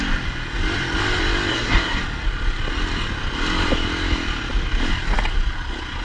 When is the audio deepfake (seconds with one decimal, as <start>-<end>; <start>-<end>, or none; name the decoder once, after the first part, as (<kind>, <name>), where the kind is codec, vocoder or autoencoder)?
1.5-2.0 (codec, SNAC)